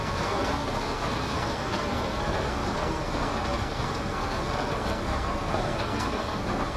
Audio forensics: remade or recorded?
remade